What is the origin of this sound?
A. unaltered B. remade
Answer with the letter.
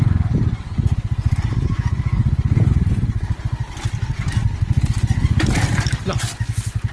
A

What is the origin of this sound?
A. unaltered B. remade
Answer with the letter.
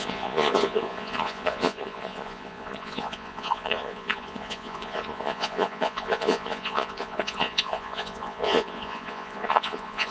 B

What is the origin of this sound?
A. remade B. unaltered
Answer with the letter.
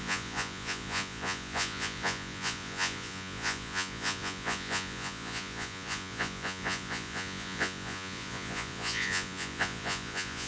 A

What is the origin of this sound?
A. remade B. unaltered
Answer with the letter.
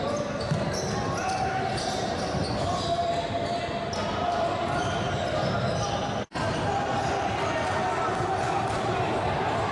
B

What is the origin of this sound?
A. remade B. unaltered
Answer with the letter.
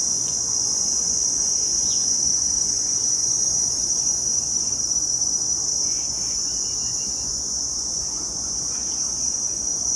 A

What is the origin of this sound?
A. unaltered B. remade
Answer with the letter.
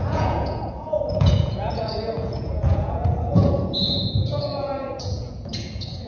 B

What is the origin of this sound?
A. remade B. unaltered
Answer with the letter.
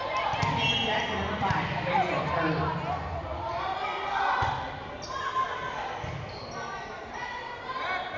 B